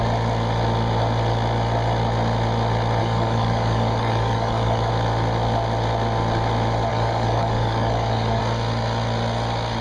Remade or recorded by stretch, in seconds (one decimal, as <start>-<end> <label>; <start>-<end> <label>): 0.0-3.0 recorded; 3.0-4.9 remade; 4.9-6.9 recorded; 6.9-8.4 remade; 8.4-9.8 recorded